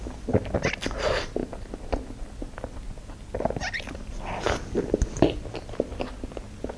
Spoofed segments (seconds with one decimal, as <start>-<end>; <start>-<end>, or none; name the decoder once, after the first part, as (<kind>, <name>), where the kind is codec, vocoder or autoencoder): none